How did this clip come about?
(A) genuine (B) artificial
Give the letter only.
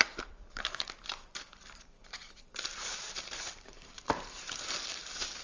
B